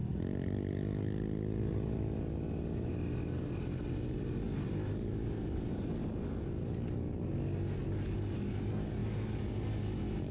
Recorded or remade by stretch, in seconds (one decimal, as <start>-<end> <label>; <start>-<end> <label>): 0.0-10.3 recorded